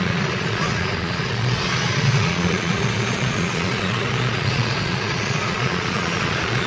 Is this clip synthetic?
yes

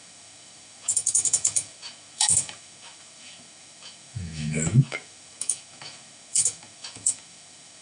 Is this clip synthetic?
yes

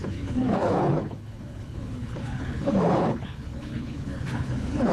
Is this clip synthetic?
yes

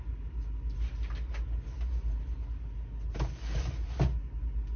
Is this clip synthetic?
no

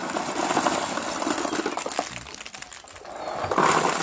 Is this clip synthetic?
no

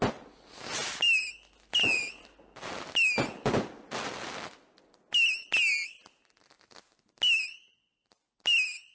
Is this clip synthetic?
no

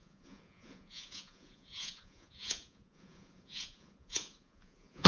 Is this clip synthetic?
yes